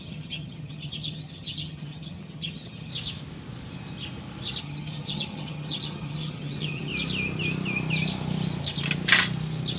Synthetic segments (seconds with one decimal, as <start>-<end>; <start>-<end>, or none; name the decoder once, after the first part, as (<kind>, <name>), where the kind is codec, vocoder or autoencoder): 0.0-2.9 (vocoder, HiFi-GAN); 4.6-6.9